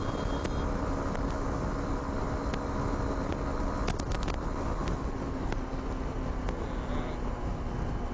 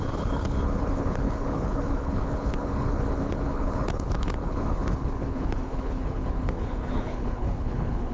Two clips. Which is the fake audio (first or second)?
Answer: second